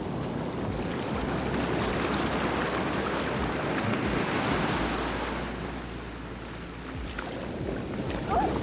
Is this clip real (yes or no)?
yes